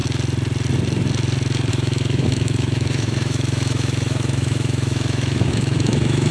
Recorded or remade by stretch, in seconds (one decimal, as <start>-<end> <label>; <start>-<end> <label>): 0.0-1.7 recorded; 1.7-6.3 remade